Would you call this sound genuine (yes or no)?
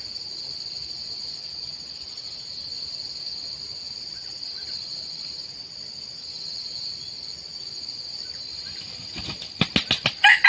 yes